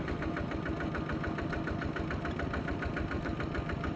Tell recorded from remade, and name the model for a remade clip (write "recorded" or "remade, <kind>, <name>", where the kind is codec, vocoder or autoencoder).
recorded